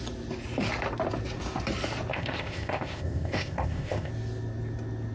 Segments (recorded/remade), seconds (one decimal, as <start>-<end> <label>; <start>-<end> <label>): 0.0-2.1 recorded; 2.1-4.1 remade; 4.1-5.1 recorded